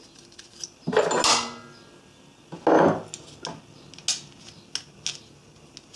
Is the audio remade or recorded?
recorded